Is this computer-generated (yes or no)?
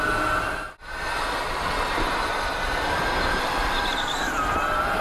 no